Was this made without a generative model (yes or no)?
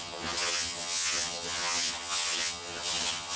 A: no